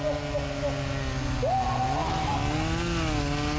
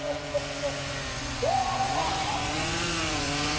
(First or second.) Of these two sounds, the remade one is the second